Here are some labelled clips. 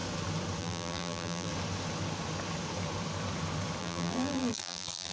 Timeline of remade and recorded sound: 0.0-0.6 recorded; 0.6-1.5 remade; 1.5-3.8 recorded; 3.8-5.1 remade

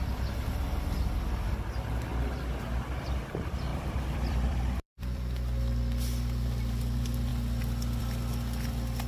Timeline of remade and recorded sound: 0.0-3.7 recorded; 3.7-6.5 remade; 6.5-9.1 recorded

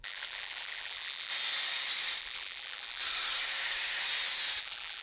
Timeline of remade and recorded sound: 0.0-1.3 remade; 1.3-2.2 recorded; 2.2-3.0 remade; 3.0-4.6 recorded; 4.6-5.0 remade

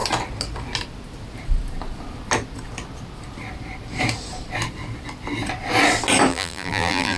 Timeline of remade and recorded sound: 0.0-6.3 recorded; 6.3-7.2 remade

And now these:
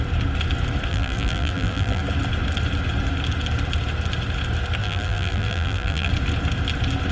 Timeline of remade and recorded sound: 0.0-0.9 recorded; 0.9-2.0 remade; 2.0-4.8 recorded; 4.8-6.1 remade; 6.1-7.1 recorded